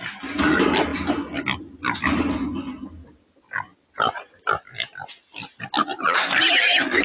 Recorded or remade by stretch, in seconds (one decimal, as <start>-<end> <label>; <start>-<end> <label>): 0.0-7.0 recorded